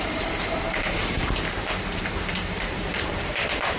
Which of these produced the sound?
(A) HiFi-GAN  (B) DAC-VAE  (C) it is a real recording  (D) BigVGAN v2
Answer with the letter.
D